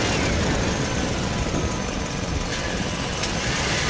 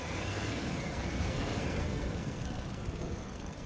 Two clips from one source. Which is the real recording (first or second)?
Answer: first